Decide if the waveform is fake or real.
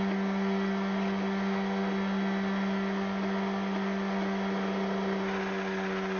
real